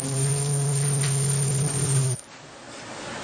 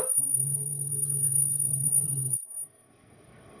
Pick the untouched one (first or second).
first